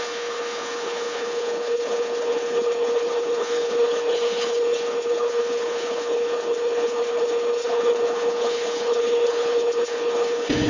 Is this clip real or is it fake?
fake